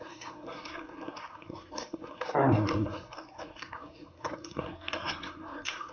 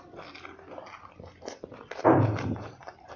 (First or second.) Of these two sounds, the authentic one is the second